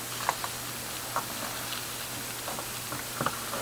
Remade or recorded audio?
recorded